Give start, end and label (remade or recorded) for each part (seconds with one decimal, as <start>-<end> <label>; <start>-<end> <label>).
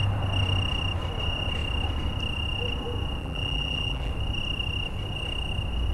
0.0-3.2 recorded; 3.2-4.1 remade; 4.1-5.9 recorded